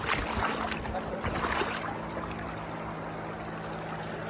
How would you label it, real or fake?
real